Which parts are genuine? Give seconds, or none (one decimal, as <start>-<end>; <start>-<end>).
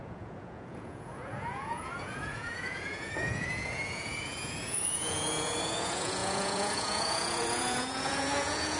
none